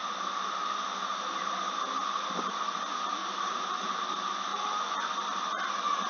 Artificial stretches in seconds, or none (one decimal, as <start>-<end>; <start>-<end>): 0.0-0.6; 1.1-1.6; 3.2-4.0; 4.5-5.1